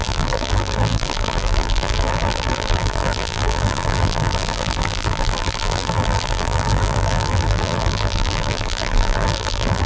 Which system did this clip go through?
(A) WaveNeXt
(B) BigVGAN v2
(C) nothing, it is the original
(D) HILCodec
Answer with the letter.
B